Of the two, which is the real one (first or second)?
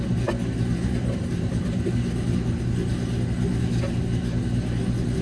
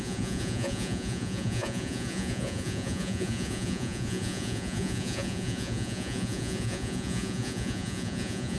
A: first